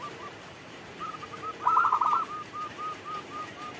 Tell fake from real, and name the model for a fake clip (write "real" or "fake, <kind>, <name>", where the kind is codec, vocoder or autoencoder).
fake, vocoder, BigVGAN v2